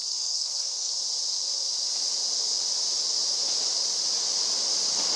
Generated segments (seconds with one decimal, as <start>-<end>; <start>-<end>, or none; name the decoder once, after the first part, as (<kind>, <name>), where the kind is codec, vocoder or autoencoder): 0.0-0.9 (codec, SNAC)